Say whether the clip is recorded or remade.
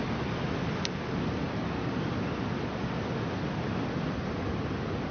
recorded